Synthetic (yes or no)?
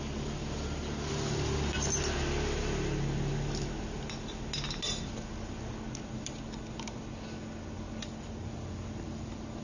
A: no